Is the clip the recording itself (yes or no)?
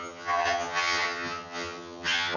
no